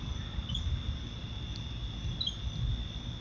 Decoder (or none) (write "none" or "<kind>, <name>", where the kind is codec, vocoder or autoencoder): none